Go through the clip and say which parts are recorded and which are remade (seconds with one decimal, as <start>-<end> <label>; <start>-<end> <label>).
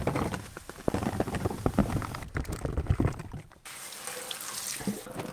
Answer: 0.0-5.3 remade